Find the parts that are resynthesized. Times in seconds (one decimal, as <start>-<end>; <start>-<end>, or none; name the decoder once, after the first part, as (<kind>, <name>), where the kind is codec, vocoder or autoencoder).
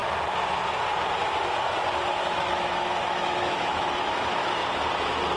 2.1-4.6 (autoencoder, DAC-VAE)